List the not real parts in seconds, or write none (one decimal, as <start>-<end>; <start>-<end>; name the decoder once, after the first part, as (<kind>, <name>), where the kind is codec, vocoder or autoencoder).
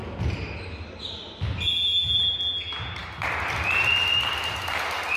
none